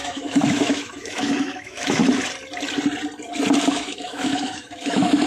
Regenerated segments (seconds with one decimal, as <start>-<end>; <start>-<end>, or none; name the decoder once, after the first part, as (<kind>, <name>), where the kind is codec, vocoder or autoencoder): 0.0-2.0 (autoencoder, DAC-VAE); 3.7-5.3